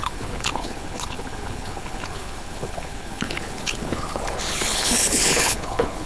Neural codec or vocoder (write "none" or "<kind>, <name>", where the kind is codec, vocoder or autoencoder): codec, HILCodec